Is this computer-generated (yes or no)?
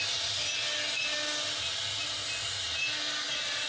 no